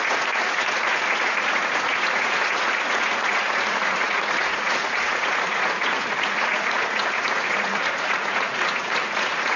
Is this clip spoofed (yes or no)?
yes